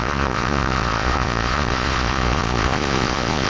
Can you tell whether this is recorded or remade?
remade